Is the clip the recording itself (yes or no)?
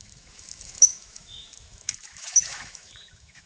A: no